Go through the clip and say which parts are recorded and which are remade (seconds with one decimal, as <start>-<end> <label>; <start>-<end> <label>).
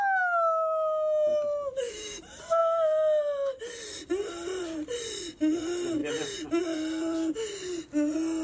0.0-1.3 recorded; 1.3-2.2 remade; 2.2-8.4 recorded